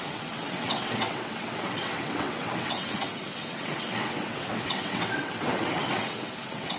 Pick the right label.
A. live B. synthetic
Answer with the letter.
B